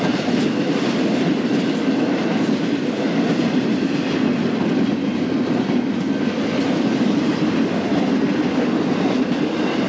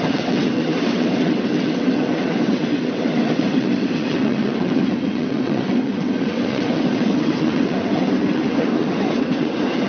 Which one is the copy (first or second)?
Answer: second